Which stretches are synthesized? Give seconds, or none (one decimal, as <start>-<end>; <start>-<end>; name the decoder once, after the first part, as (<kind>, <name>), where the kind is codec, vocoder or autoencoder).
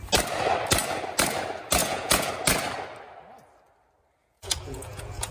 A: 1.8-2.3 (vocoder, Vocos); 4.2-5.3